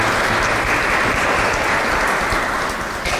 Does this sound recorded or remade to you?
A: recorded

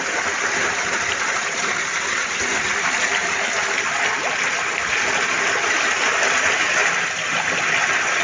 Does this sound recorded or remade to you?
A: recorded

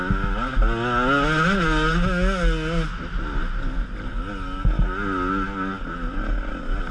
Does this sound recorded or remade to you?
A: recorded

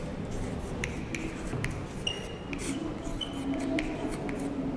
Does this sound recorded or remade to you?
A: recorded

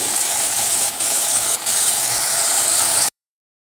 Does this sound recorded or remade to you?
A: remade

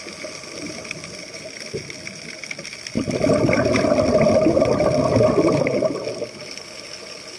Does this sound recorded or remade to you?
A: remade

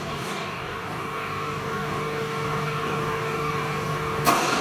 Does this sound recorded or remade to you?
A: remade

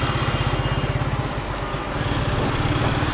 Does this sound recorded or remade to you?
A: recorded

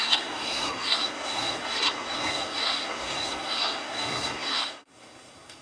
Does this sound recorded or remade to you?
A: remade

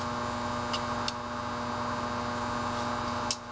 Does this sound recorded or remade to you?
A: recorded